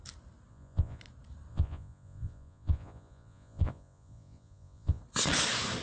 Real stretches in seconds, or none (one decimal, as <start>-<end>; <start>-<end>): 0.0-0.5; 1.0-1.5; 5.0-5.8